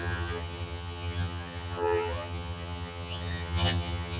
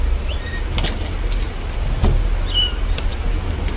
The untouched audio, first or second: second